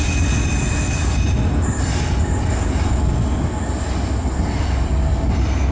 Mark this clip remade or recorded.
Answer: recorded